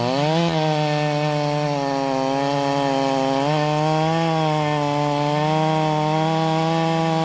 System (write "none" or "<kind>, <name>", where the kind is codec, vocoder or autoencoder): none